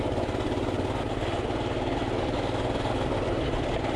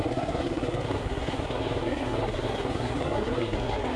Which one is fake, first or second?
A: second